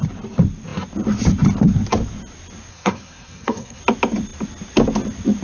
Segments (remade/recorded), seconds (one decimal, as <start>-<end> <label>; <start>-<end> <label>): 0.0-2.7 recorded; 2.7-3.8 remade; 3.8-5.4 recorded